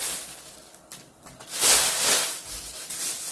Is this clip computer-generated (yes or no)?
no